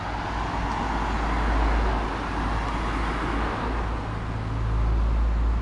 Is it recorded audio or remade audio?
recorded